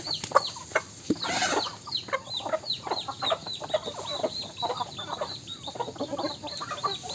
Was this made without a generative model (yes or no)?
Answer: yes